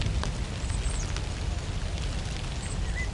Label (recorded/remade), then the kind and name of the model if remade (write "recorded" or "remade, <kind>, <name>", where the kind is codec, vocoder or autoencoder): recorded